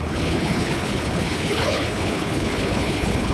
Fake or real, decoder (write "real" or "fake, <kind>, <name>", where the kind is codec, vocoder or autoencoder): fake, codec, HILCodec